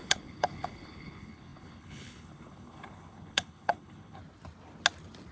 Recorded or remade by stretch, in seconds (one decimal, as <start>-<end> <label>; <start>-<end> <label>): 0.0-4.2 remade; 4.2-5.3 recorded